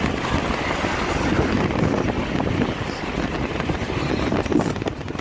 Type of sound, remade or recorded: recorded